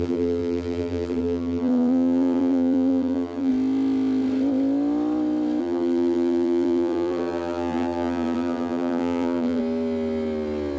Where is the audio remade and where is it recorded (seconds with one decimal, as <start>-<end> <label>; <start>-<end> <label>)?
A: 0.0-3.5 remade; 3.5-5.6 recorded; 5.6-9.6 remade; 9.6-10.8 recorded